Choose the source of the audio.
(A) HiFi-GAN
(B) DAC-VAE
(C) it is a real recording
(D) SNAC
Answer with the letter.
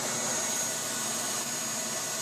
C